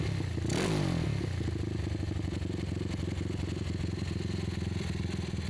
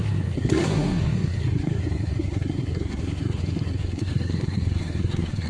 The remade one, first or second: second